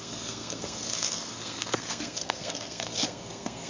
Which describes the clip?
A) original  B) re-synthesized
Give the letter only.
B